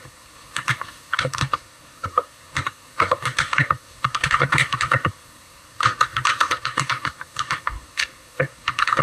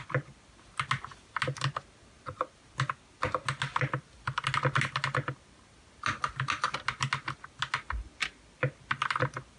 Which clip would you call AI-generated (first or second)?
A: first